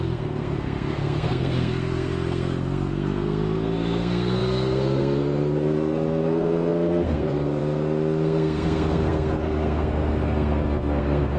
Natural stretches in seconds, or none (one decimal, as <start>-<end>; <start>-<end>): none

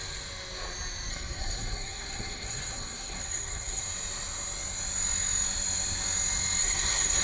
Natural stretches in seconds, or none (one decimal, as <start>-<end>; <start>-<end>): 0.0-1.1; 3.8-6.6

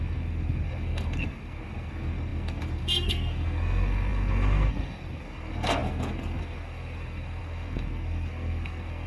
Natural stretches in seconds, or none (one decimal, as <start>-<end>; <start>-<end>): none